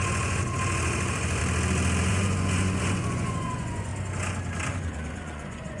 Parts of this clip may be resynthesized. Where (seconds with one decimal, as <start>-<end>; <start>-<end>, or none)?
0.0-1.4; 2.1-3.9; 4.7-5.8